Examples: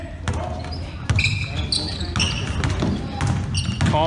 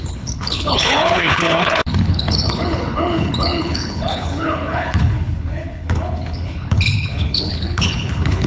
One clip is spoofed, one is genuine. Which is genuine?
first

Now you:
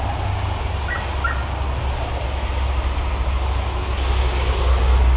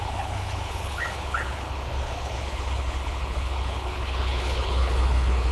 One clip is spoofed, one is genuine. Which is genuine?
first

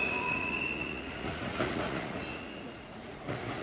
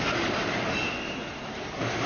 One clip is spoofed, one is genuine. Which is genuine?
second